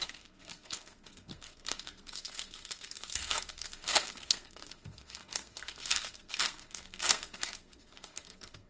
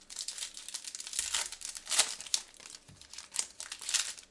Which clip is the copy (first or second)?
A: first